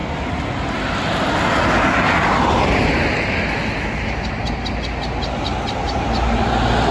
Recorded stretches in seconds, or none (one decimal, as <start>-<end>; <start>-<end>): 0.0-6.9